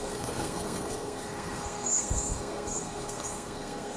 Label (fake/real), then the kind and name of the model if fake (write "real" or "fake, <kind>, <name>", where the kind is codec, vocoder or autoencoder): fake, codec, SNAC